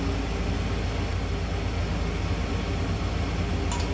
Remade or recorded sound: recorded